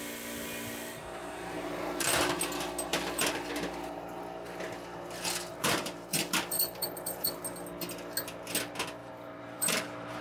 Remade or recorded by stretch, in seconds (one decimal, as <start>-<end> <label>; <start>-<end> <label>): 0.0-1.2 recorded; 1.2-2.4 remade; 2.4-2.9 recorded; 2.9-3.5 remade; 3.5-5.5 recorded; 5.5-7.4 remade; 7.4-9.0 recorded; 9.0-10.2 remade